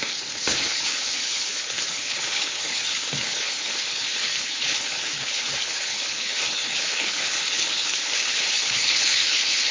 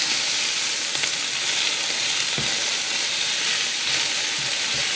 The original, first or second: second